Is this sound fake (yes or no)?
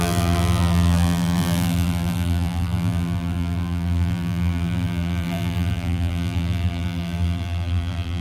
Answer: yes